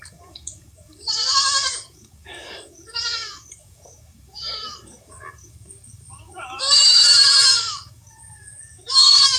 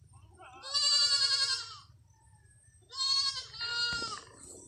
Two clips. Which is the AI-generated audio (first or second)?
first